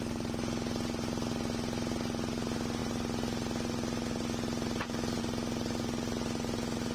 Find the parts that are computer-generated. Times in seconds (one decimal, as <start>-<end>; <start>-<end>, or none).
none